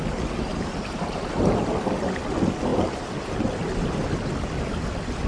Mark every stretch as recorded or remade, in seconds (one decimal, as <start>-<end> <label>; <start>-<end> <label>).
0.0-0.5 recorded; 0.5-1.6 remade; 1.6-2.7 recorded; 2.7-3.6 remade; 3.6-5.3 recorded